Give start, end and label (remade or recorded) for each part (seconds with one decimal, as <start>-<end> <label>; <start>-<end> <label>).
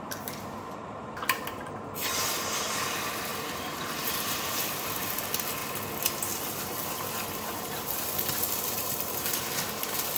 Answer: 0.0-3.3 remade; 3.3-3.8 recorded; 3.8-5.6 remade; 5.6-8.6 recorded; 8.6-10.2 remade